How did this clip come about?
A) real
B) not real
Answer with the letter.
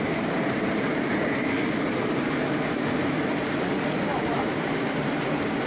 B